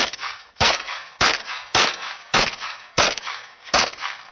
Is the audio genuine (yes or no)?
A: no